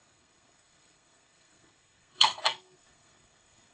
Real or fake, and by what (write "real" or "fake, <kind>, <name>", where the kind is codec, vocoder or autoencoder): fake, codec, SNAC